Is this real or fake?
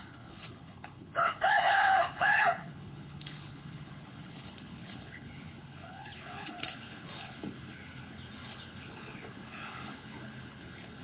fake